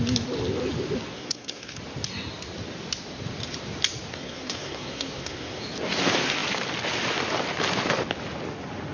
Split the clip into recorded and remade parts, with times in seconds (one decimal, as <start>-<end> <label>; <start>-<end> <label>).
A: 0.0-1.1 recorded; 1.1-1.8 remade; 1.8-4.1 recorded; 4.1-5.6 remade; 5.6-8.9 recorded